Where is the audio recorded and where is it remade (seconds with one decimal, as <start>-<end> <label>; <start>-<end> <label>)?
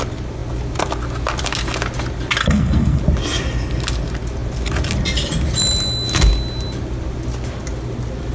0.0-2.4 recorded; 2.4-3.0 remade; 3.0-8.3 recorded